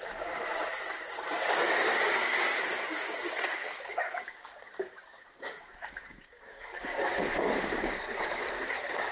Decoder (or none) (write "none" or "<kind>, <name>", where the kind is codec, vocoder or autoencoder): codec, DAC